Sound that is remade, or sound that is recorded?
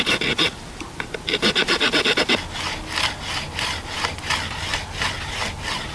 recorded